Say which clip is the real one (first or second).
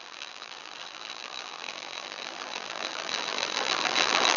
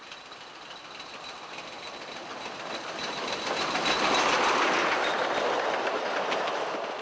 second